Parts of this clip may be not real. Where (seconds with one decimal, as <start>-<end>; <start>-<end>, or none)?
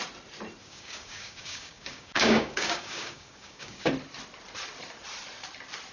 0.6-3.9